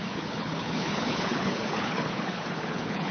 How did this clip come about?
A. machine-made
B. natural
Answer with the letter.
A